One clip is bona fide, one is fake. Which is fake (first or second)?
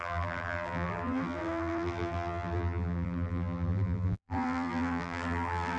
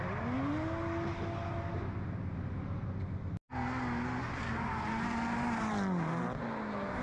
first